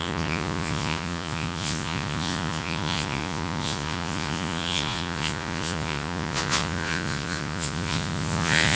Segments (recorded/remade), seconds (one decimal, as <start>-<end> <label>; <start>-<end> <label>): 0.0-8.8 remade

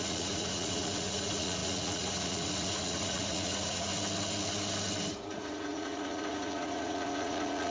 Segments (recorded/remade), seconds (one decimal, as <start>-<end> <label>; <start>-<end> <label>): 0.0-3.9 remade; 3.9-5.1 recorded; 5.1-7.7 remade

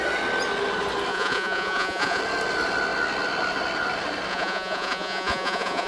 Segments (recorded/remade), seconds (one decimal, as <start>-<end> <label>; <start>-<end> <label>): 0.0-1.1 recorded; 1.1-2.2 remade; 2.2-4.3 recorded; 4.3-5.9 remade

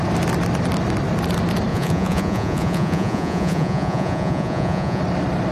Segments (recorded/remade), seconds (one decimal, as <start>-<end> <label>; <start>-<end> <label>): 0.0-1.7 recorded; 1.7-5.0 remade; 5.0-5.5 recorded

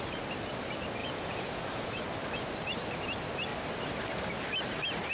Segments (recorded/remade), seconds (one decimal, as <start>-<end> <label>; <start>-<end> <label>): 0.0-1.0 recorded; 1.0-2.0 remade; 2.0-5.1 recorded

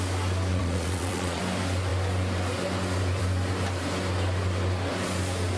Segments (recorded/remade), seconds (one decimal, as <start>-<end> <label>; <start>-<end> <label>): 0.0-0.5 recorded; 0.5-1.4 remade; 1.4-5.6 recorded

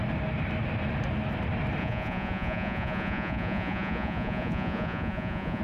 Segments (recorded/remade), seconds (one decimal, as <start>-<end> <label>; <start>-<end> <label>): 0.0-1.8 recorded; 1.8-5.6 remade

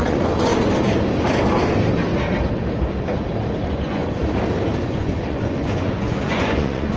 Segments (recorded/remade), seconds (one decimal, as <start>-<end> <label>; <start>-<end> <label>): 0.0-0.5 remade; 0.5-3.6 recorded; 3.6-4.0 remade; 4.0-4.8 recorded; 4.8-7.0 remade